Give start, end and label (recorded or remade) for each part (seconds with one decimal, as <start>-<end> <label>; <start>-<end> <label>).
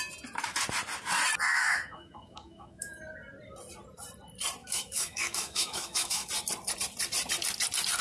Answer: 0.0-1.5 recorded; 1.5-3.0 remade; 3.0-4.6 recorded; 4.6-6.3 remade; 6.3-8.0 recorded